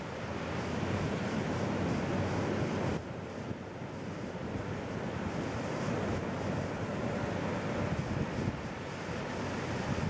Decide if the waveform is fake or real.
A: real